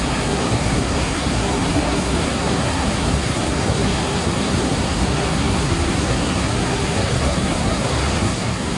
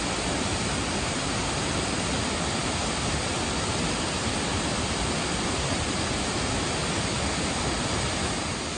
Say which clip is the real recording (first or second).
second